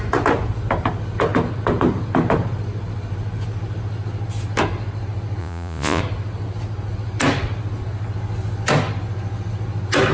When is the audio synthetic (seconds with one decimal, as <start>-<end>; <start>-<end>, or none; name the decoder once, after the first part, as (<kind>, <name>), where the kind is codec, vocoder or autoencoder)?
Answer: 5.4-6.0 (vocoder, Vocos)